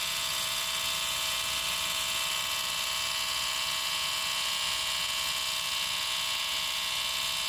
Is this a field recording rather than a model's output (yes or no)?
no